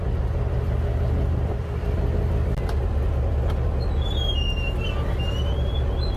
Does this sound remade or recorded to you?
recorded